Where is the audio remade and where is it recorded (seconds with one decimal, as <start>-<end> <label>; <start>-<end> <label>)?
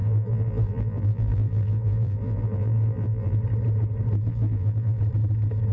0.0-3.4 remade; 3.4-4.3 recorded; 4.3-5.0 remade; 5.0-5.7 recorded